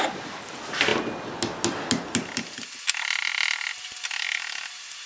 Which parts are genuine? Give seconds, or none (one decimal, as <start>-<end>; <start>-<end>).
0.0-5.1